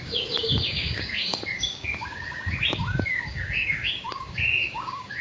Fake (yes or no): yes